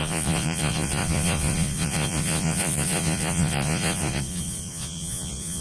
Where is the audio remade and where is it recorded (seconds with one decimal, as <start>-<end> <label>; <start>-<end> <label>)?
0.0-5.6 remade